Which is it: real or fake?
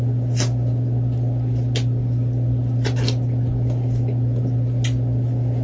real